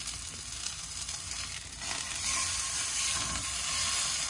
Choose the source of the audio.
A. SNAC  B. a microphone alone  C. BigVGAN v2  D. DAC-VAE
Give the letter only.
B